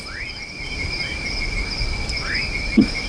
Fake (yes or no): no